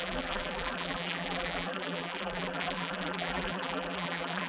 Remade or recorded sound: remade